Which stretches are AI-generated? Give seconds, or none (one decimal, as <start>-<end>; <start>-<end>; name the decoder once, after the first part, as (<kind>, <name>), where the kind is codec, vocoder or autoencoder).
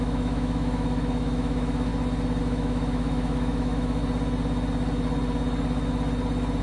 0.0-1.9 (autoencoder, DAC-VAE); 2.4-4.0